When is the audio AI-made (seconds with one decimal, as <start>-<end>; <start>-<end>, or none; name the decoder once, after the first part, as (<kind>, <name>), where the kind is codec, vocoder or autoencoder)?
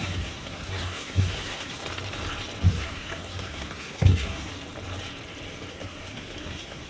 0.0-1.8 (codec, SNAC); 2.7-4.5; 5.7-6.9